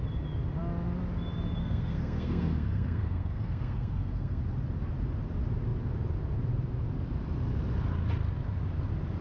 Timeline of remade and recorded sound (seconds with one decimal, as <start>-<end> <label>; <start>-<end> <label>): 0.0-1.6 recorded; 1.6-4.4 remade; 4.4-9.2 recorded